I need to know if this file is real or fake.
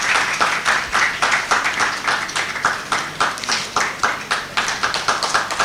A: real